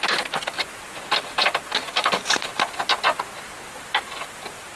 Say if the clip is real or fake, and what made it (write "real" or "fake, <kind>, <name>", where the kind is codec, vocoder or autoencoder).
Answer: real